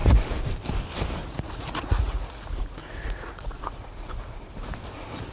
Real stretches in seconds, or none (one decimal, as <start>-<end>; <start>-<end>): 0.5-1.2; 4.4-5.3